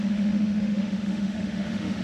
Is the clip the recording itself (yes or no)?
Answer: no